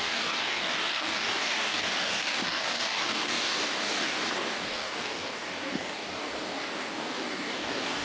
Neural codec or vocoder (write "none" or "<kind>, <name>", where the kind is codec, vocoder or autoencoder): codec, DAC